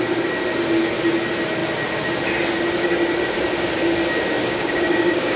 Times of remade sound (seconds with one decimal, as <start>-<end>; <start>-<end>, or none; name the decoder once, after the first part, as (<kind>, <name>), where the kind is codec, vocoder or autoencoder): 4.5-5.4 (codec, DAC)

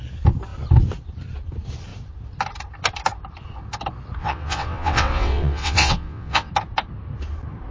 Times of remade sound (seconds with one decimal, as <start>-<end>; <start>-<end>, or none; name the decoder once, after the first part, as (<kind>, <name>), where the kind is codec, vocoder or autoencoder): 4.2-6.5 (vocoder, WaveNeXt)

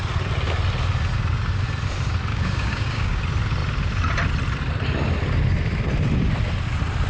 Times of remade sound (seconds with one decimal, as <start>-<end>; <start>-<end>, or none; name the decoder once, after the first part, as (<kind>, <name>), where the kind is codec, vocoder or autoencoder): 2.3-3.2 (codec, DAC)

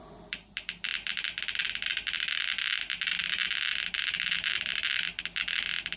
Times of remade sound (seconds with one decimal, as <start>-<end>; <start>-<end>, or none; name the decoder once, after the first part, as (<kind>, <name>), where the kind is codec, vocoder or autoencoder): none